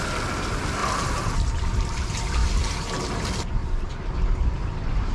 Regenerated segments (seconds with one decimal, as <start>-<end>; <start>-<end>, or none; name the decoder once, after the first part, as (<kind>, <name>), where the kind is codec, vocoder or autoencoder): 0.8-1.3 (vocoder, BigVGAN v2); 2.4-2.9; 3.6-4.1